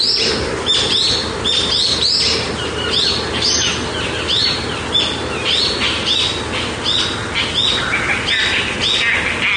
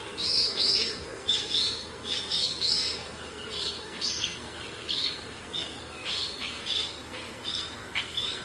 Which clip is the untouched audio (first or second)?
first